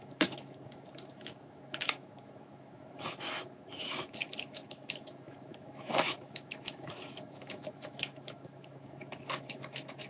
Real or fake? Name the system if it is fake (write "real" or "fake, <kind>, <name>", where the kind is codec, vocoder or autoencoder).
fake, autoencoder, DAC-VAE